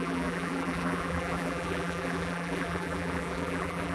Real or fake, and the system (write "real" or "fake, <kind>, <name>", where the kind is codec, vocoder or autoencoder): fake, vocoder, BigVGAN v2